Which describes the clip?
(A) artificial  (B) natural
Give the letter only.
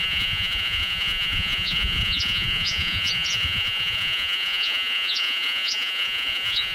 A